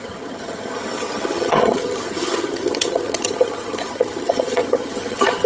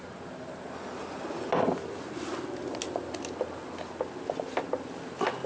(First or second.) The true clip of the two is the second